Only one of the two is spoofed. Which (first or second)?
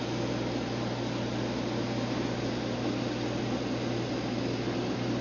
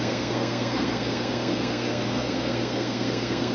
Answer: second